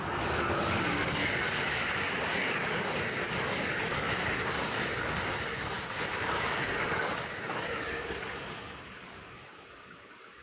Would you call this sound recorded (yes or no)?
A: no